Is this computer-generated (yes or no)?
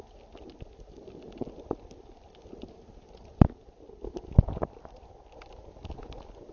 no